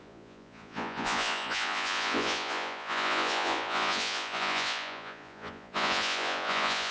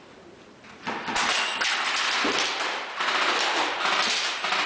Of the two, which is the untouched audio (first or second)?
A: second